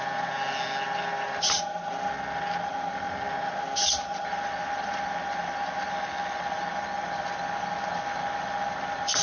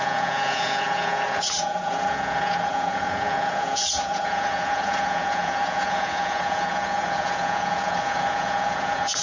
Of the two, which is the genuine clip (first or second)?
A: first